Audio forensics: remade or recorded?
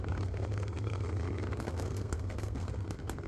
remade